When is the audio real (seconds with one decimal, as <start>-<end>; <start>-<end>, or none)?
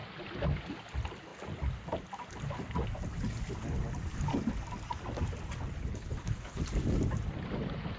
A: 0.0-5.9; 6.6-8.0